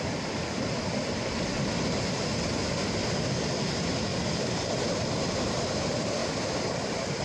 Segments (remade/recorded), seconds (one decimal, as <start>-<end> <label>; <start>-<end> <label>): 0.0-7.2 recorded